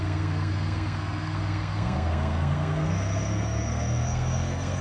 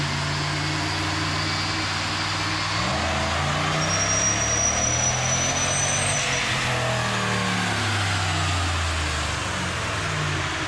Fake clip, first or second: first